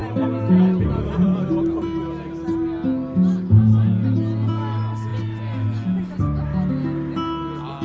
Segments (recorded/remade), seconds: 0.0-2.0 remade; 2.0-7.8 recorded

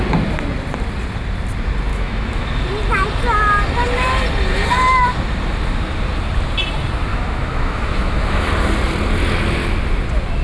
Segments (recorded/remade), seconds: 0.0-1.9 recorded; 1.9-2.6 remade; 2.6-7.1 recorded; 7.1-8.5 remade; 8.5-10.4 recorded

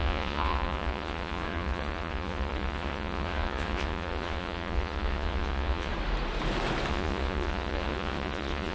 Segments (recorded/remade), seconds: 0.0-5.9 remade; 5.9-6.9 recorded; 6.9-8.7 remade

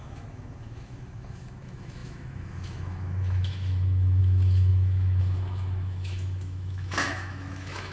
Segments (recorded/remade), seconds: 0.0-7.9 remade